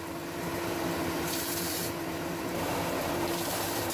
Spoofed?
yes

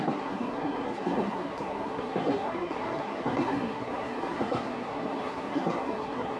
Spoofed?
yes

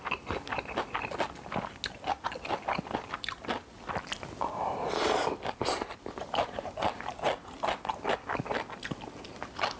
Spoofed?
no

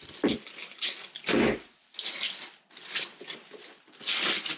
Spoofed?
no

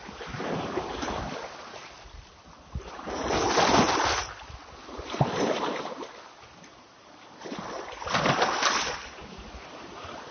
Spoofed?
no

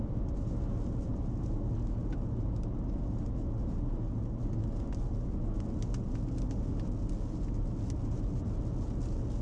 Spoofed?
no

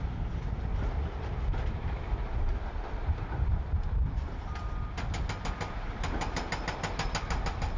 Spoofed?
no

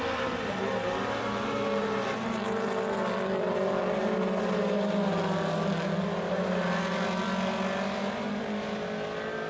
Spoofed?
no